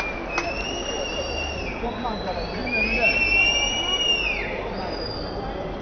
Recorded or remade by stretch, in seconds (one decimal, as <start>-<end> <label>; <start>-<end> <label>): 0.0-5.8 recorded